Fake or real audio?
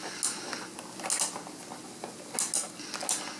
real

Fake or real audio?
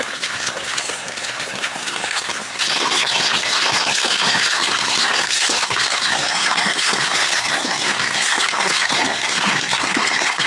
fake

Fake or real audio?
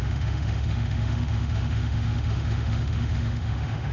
fake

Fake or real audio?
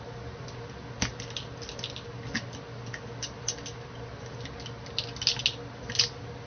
real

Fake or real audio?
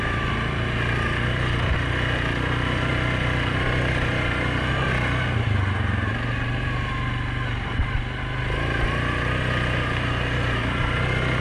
real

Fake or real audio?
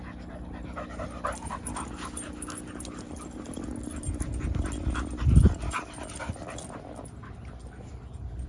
real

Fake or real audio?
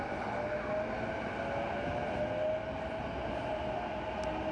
real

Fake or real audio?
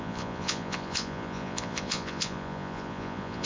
fake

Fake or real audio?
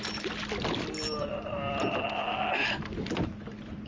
real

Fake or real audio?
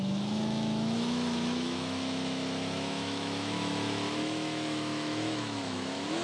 fake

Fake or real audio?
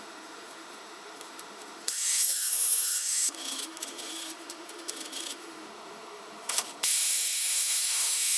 fake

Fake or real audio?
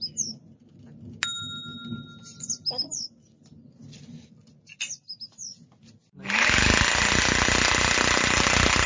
real